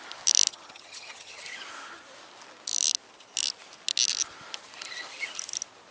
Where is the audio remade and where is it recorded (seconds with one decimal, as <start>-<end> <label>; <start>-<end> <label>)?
0.0-0.5 recorded; 0.5-1.4 remade; 1.4-5.9 recorded